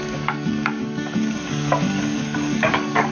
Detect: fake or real fake